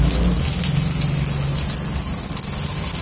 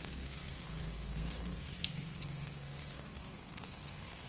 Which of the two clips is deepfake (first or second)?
second